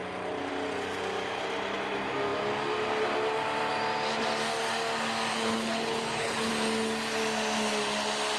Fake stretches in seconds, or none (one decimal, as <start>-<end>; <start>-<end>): 5.3-6.5